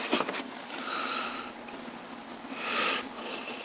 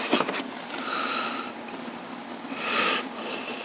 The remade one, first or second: second